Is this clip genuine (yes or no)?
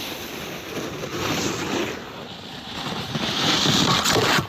yes